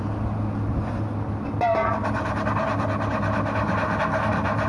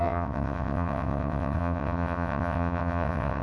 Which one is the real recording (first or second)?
first